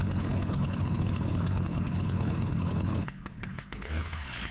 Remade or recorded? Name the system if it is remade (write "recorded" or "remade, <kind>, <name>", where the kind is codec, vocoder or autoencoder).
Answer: remade, codec, HILCodec